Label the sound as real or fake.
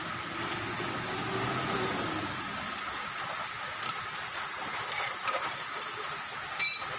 real